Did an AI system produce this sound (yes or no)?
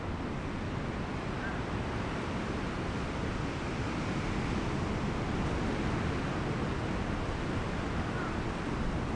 no